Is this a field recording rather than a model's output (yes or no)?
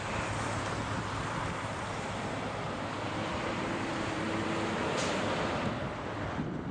no